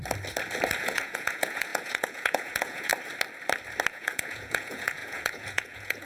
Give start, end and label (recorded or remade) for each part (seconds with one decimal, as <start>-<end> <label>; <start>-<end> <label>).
0.0-0.8 recorded; 0.8-2.9 remade; 2.9-3.9 recorded; 3.9-6.1 remade